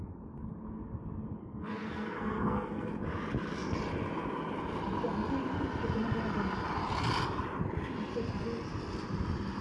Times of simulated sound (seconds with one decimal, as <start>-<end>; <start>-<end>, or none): 1.4-2.9